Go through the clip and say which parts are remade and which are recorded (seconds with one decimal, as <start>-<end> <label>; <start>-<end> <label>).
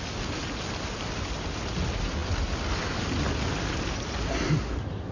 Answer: 0.0-5.1 recorded